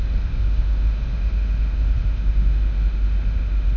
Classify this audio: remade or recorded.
remade